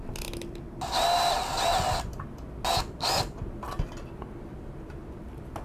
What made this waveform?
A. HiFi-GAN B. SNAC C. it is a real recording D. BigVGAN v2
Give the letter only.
C